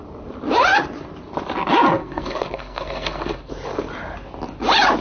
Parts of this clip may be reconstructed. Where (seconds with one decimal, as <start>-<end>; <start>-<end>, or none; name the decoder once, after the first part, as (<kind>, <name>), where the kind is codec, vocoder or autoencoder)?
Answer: 2.0-3.5 (codec, SNAC)